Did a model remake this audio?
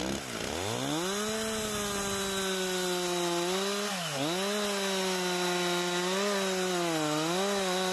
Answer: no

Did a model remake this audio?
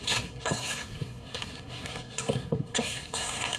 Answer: yes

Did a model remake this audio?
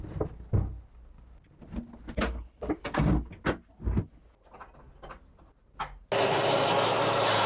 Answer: no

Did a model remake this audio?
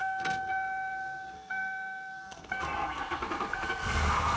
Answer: yes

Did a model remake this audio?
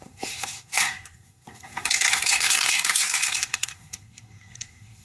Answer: yes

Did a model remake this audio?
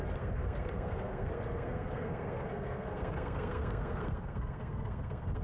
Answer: yes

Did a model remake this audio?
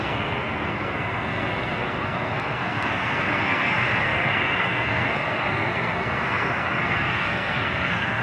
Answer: yes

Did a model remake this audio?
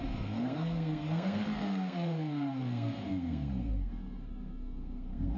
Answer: yes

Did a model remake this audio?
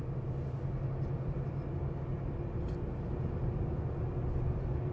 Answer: no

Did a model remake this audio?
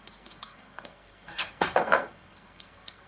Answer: yes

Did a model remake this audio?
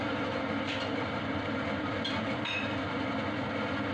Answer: no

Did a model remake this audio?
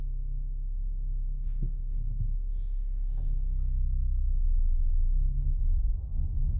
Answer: yes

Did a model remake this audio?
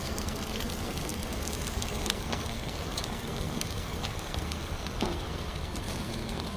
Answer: yes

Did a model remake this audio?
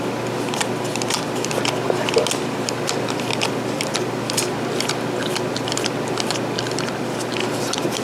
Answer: no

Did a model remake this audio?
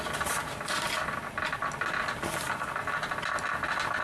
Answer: no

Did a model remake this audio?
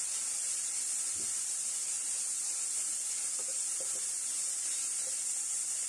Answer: no